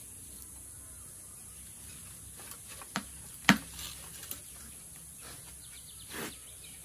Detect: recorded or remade recorded